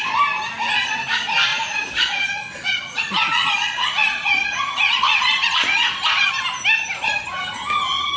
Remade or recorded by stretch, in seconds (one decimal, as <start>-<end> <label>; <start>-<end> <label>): 0.0-1.5 recorded; 1.5-6.3 remade; 6.3-7.0 recorded; 7.0-7.6 remade; 7.6-8.2 recorded